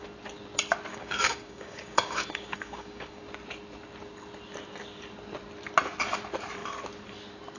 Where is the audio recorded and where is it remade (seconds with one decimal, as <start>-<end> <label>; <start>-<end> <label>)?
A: 0.0-0.9 recorded; 0.9-3.2 remade; 3.2-7.6 recorded